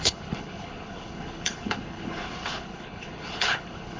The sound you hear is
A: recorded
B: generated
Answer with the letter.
B